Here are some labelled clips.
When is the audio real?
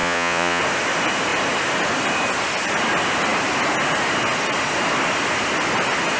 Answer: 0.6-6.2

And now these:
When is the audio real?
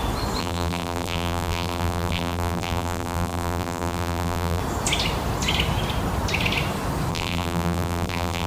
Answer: 0.0-0.4; 4.6-7.1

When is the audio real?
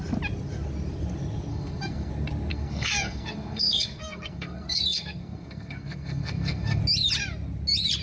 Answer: 0.0-1.5; 2.1-2.5; 6.8-8.0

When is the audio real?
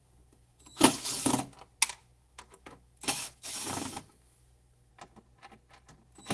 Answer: 1.3-2.0; 4.9-6.3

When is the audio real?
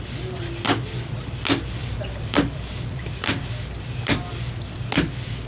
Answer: 0.0-1.8; 3.7-5.5